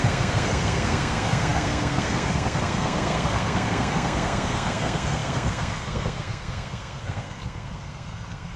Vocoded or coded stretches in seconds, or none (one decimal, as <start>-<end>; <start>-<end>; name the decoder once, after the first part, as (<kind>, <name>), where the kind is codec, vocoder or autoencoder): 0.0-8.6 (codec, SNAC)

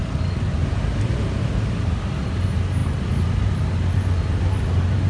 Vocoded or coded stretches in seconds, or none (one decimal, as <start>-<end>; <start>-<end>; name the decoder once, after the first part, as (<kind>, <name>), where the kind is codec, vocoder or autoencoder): none

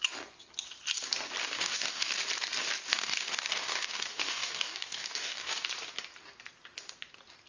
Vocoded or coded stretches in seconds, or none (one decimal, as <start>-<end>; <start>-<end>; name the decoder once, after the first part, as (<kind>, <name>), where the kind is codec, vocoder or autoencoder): 1.4-2.1 (codec, DAC); 2.9-5.7

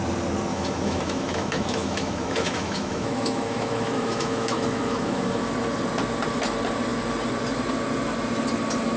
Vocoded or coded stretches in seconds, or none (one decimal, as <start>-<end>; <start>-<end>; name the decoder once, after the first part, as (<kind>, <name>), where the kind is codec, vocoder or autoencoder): 0.5-5.5 (autoencoder, DAC-VAE)

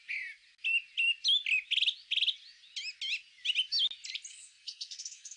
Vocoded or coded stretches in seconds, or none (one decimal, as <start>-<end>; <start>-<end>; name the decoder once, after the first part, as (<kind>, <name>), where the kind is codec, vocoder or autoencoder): 4.3-5.4 (codec, SNAC)

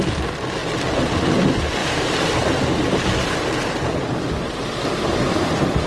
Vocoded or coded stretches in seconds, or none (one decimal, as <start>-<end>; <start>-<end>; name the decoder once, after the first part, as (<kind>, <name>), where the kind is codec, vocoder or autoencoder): none

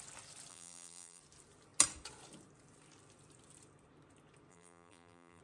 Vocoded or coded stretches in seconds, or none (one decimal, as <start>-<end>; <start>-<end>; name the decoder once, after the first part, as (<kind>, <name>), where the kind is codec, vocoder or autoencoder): 0.5-1.2 (vocoder, BigVGAN v2); 4.5-5.4